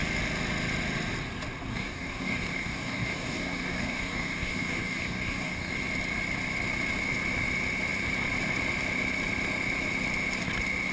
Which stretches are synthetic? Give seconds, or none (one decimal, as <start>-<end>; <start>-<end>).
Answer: 1.7-5.7